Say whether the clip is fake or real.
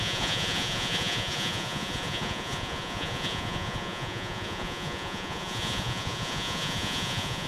fake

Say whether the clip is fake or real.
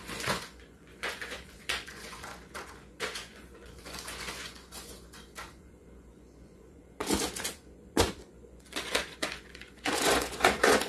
fake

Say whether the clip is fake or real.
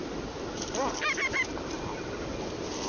real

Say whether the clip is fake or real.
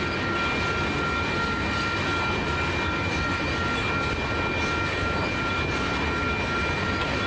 real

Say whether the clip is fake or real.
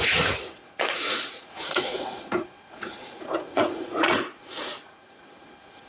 fake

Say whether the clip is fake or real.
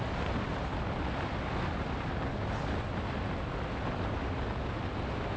real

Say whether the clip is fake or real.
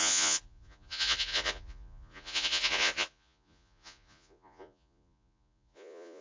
fake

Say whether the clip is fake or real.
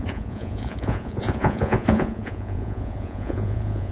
fake